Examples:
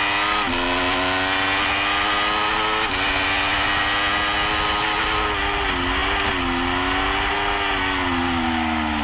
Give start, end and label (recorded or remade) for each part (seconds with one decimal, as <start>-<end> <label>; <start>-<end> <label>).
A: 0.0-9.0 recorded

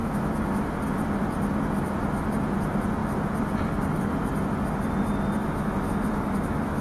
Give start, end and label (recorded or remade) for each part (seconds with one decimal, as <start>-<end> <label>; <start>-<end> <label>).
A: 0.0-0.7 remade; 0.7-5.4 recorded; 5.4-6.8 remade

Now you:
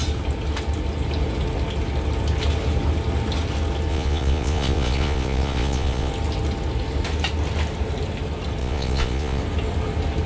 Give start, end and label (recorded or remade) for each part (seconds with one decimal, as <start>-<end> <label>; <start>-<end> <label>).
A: 0.0-3.9 recorded; 3.9-6.1 remade; 6.1-8.6 recorded; 8.6-9.4 remade; 9.4-10.3 recorded

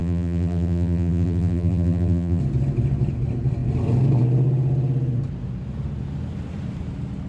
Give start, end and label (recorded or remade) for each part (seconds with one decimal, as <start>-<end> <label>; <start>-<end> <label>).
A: 0.0-2.4 remade; 2.4-7.3 recorded